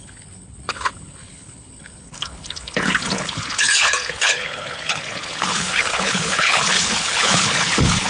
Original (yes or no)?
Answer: no